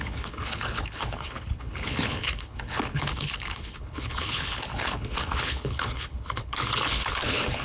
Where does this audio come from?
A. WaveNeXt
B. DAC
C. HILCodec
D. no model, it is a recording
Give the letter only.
C